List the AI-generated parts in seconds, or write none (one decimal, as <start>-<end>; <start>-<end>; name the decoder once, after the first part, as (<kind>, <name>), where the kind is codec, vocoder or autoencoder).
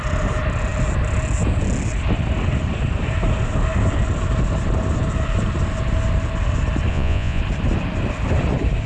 6.9-7.4 (vocoder, Vocos)